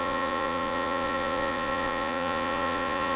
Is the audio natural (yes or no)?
no